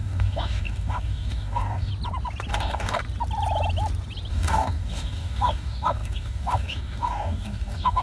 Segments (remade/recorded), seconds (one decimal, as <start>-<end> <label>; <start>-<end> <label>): 0.0-1.9 remade; 1.9-2.5 recorded; 2.5-3.0 remade; 3.0-4.3 recorded; 4.3-8.0 remade